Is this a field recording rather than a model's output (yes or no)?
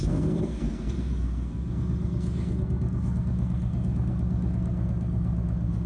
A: no